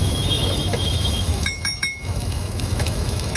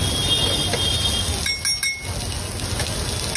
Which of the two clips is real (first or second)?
second